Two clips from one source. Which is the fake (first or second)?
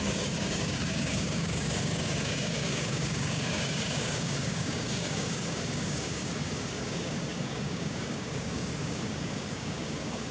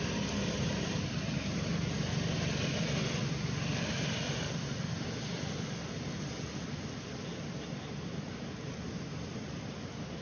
first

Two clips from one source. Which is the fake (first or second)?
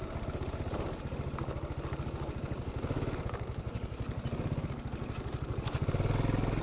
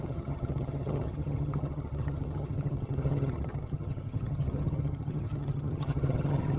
second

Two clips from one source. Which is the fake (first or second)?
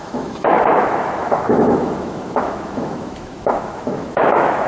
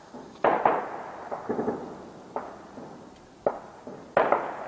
first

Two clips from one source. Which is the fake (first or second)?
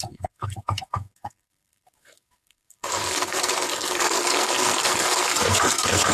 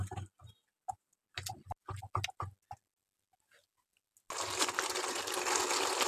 first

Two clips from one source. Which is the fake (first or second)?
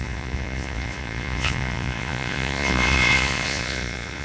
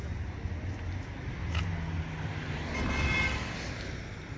first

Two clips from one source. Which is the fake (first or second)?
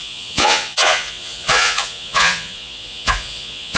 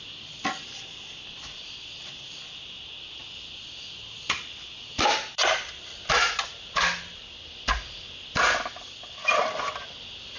first